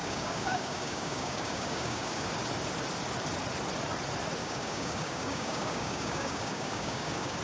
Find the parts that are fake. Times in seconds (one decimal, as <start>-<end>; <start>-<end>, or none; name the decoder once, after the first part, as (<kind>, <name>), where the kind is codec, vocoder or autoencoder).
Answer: 0.0-2.3 (codec, DAC); 4.4-7.4